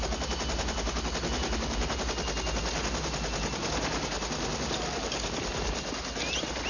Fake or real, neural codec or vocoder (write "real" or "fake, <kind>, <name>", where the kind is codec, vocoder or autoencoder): real